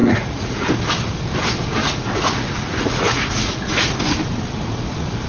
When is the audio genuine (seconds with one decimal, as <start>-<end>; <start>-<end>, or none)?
0.7-1.8; 3.9-5.3

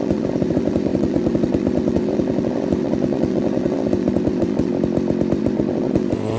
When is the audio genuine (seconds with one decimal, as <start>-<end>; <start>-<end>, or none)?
4.7-5.4

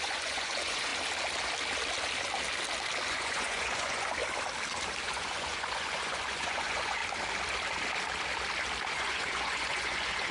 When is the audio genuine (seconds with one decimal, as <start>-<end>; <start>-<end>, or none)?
0.9-3.1; 4.2-5.0; 7.0-8.9